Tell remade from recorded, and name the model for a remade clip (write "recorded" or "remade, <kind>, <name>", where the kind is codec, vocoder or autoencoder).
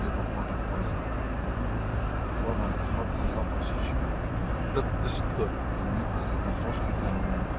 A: remade, vocoder, BigVGAN v2